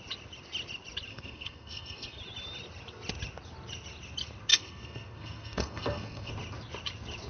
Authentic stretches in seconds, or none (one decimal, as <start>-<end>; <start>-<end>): 0.0-1.1; 2.2-4.5; 6.3-7.3